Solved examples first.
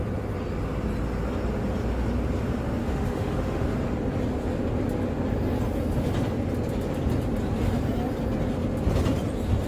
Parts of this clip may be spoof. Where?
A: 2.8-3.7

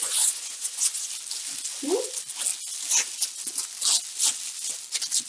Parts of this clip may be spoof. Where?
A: 0.0-1.1

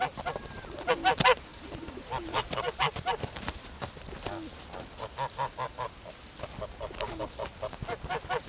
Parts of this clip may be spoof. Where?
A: 1.5-3.6

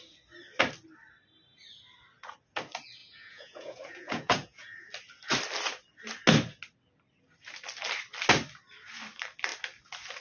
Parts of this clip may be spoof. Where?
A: 3.0-4.9

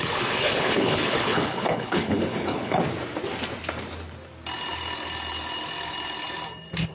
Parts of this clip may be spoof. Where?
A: 0.0-2.8

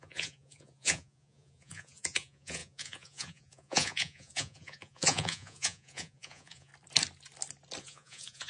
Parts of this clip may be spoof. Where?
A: 0.0-6.7; 7.8-8.5